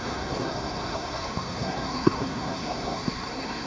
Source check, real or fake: fake